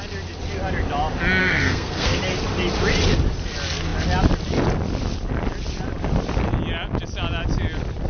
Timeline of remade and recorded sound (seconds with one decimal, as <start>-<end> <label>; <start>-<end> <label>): 0.0-1.4 recorded; 1.4-2.2 remade; 2.2-8.1 recorded